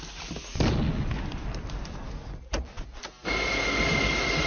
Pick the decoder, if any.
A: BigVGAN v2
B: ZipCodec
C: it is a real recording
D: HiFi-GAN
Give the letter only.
C